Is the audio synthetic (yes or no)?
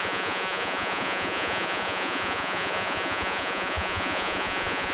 yes